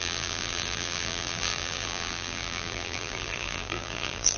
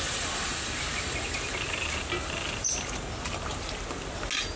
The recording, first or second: second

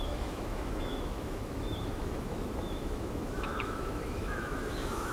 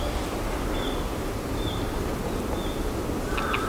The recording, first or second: second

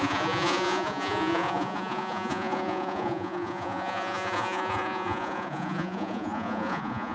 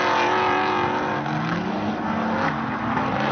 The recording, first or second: second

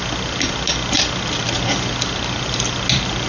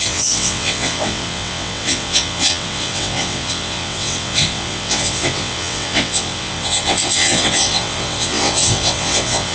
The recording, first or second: first